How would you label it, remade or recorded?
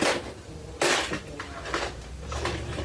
recorded